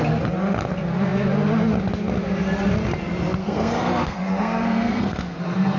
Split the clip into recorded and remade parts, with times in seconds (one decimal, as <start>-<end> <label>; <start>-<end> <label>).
0.0-3.4 recorded; 3.4-5.8 remade